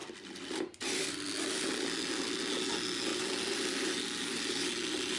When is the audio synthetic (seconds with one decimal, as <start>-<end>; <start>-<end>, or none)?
0.0-1.1; 3.1-5.2